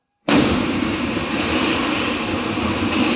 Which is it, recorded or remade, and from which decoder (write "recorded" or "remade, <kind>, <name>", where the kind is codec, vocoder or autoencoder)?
remade, vocoder, BigVGAN v2